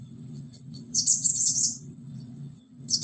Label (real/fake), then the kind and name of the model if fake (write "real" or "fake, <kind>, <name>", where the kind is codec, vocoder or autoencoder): fake, vocoder, WaveNeXt